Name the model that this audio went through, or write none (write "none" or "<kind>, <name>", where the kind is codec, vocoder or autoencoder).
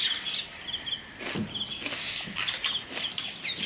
none